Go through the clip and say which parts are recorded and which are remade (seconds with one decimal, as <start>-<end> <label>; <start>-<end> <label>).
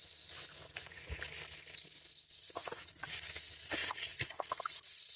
0.0-0.6 recorded; 0.6-1.2 remade; 1.2-2.4 recorded; 2.4-3.1 remade; 3.1-3.8 recorded; 3.8-4.4 remade; 4.4-5.2 recorded